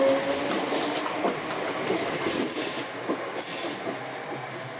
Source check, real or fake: real